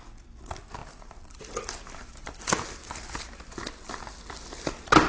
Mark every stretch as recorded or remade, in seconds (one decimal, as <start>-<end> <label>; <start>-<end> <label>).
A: 0.0-0.8 recorded; 0.8-2.4 remade; 2.4-5.1 recorded